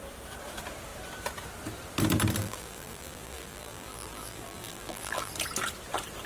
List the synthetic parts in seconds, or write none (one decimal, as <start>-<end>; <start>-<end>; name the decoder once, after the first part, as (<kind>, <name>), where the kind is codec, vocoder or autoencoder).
2.4-5.3 (vocoder, BigVGAN v2)